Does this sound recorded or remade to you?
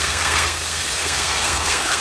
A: remade